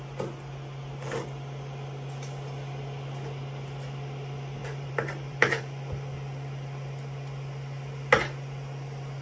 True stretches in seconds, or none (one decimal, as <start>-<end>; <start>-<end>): 0.0-4.6; 5.6-9.2